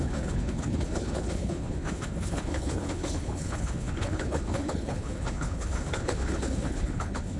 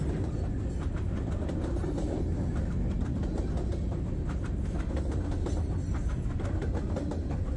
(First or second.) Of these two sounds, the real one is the second